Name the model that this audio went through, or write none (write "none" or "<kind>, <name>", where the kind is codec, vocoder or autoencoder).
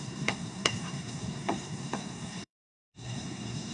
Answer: codec, SNAC